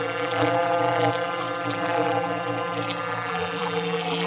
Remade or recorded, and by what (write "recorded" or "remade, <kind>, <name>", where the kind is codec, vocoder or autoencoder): remade, vocoder, BigVGAN v2